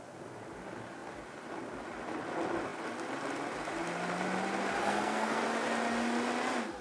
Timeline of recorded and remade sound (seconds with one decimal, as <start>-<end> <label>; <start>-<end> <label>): 0.0-4.8 recorded; 4.8-5.4 remade; 5.4-6.8 recorded

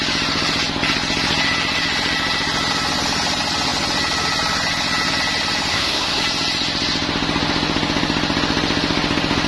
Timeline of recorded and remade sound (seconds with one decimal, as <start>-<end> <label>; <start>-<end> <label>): 0.0-5.7 recorded; 5.7-6.2 remade; 6.2-9.5 recorded

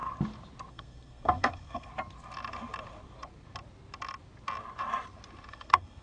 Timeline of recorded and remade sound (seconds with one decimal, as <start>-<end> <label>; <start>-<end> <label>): 0.0-0.7 recorded; 0.7-1.9 remade; 1.9-5.5 recorded; 5.5-6.0 remade